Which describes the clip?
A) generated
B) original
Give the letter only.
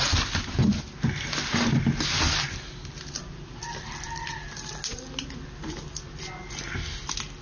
B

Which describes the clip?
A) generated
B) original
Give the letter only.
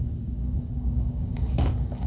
A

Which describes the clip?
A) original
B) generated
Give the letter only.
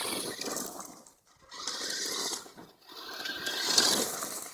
A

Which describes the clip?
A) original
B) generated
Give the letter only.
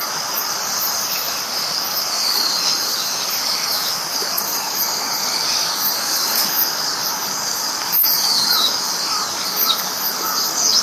B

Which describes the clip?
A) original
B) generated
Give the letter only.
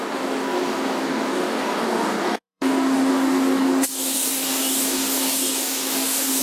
B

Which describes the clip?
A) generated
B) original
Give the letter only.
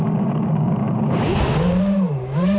A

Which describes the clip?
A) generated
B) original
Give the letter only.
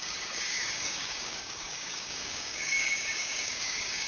A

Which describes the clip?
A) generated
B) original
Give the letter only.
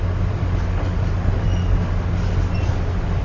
B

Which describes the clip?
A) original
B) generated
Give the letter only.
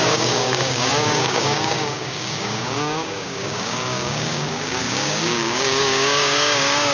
B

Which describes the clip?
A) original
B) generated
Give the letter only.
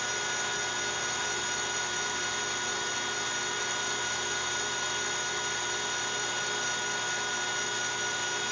A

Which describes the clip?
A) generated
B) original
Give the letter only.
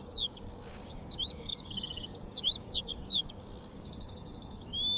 A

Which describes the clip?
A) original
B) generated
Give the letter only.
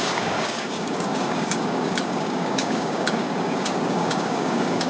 B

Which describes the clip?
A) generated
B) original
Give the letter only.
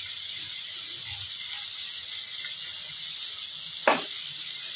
B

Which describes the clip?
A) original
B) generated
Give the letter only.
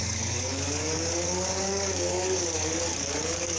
B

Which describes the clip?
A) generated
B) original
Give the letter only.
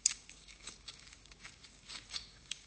A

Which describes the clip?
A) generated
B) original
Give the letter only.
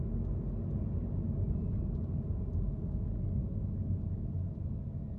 B